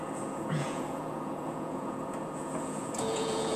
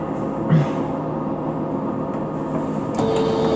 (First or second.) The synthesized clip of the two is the first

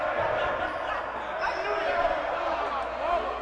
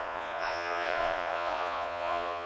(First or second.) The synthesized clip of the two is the second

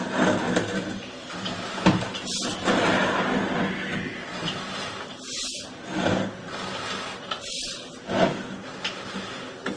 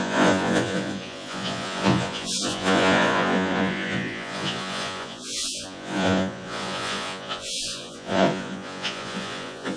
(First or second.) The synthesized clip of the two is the second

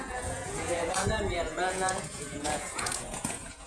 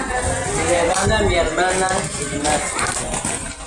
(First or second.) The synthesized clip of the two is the first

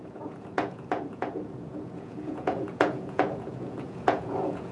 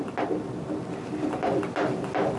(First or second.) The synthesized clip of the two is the first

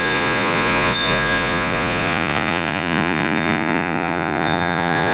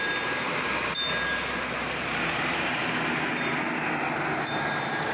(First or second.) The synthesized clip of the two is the first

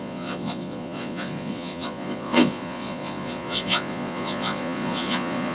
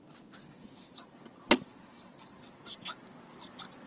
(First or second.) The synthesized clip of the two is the first